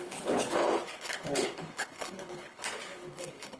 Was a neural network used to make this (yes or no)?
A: yes